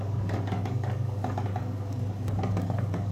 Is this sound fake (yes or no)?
yes